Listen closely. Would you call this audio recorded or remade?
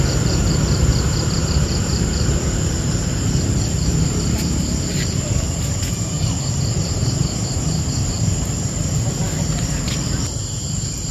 remade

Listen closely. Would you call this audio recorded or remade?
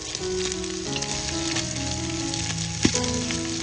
recorded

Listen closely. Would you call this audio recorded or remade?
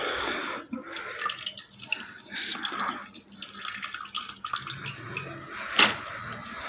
recorded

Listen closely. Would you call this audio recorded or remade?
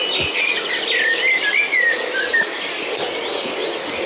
recorded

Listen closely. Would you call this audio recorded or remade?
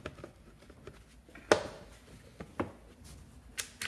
recorded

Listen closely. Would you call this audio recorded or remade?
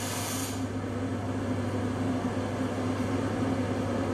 recorded